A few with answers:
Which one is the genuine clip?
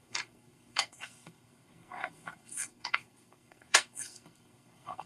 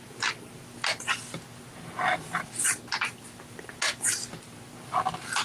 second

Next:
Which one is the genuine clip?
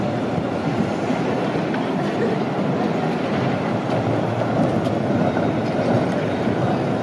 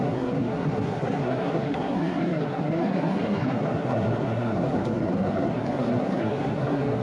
first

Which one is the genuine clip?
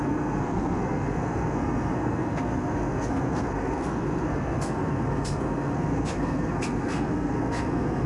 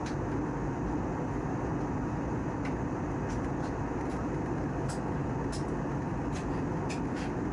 second